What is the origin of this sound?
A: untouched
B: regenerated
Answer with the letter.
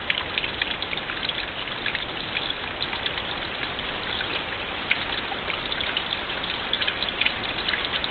B